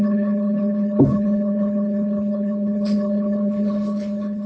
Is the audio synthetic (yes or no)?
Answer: yes